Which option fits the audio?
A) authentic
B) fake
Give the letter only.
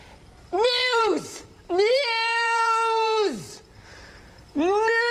B